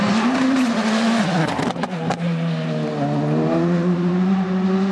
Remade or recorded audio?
recorded